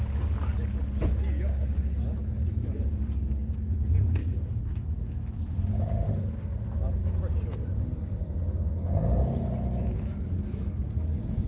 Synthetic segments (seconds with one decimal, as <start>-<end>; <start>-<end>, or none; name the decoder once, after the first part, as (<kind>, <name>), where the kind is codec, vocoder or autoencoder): 4.2-5.4 (autoencoder, DAC-VAE)